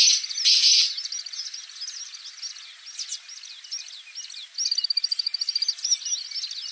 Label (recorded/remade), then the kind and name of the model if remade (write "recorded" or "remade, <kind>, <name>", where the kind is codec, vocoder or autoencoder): recorded